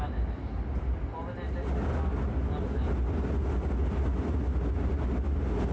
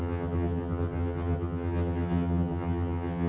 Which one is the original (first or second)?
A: first